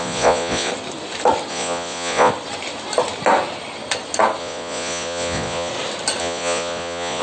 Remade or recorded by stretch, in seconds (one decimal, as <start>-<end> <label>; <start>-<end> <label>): 0.0-0.7 remade; 0.7-1.5 recorded; 1.5-2.3 remade; 2.3-4.4 recorded; 4.4-5.7 remade; 5.7-6.2 recorded; 6.2-7.2 remade